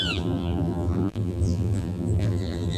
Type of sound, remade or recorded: remade